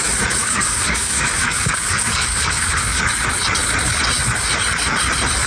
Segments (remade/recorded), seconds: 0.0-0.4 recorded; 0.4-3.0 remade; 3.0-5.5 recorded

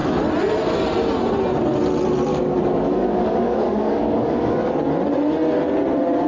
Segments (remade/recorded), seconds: 0.0-2.3 recorded; 2.3-4.7 remade; 4.7-6.3 recorded